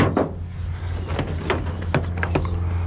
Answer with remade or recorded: recorded